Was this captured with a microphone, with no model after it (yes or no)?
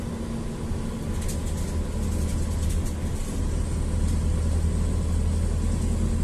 yes